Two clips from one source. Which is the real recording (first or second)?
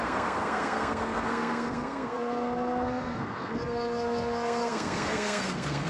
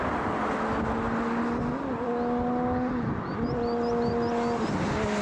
second